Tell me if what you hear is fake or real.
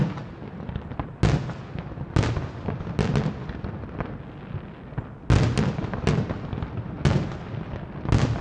real